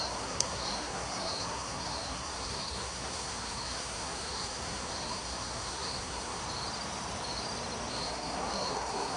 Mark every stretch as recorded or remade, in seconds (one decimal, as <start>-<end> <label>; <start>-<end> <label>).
0.0-6.4 remade; 6.4-7.9 recorded; 7.9-9.2 remade